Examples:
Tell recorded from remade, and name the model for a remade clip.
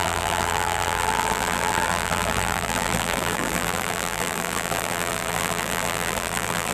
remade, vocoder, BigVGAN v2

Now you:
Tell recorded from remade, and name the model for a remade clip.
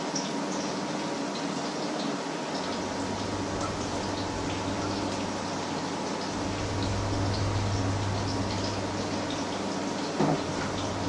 recorded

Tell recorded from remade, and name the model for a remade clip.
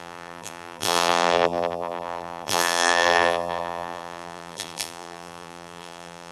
remade, vocoder, BigVGAN v2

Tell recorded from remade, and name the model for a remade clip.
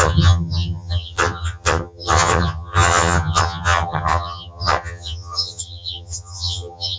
remade, vocoder, HiFi-GAN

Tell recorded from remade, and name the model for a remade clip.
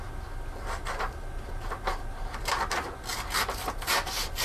recorded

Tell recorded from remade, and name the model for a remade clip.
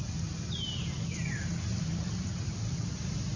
recorded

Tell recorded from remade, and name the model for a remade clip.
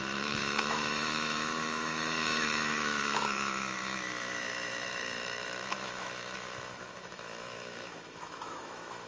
remade, autoencoder, DAC-VAE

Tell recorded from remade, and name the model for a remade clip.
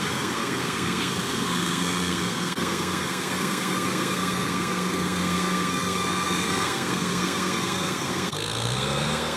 remade, codec, SNAC